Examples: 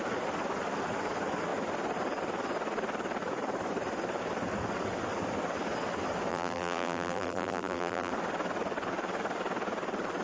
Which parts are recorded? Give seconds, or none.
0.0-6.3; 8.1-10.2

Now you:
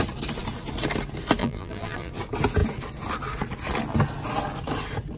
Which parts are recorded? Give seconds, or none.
0.0-1.4; 2.1-5.2

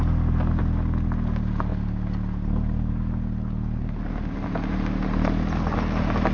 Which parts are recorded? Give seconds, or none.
0.0-6.3

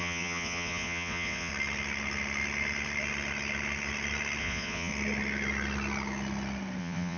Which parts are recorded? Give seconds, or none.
1.5-4.4; 4.9-6.8